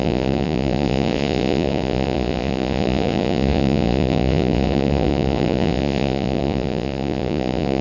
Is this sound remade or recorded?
remade